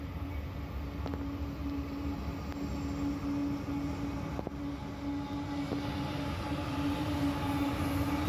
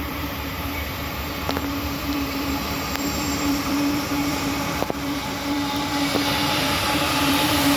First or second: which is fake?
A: second